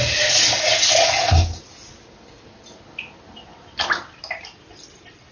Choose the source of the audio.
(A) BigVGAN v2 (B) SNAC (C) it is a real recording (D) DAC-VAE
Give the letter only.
C